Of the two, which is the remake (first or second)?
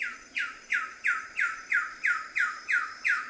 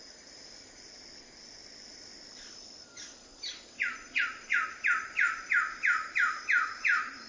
first